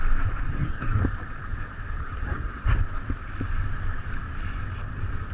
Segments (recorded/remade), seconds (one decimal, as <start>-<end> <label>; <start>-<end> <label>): 0.0-0.5 recorded; 0.5-1.0 remade; 1.0-2.0 recorded; 2.0-2.8 remade; 2.8-5.3 recorded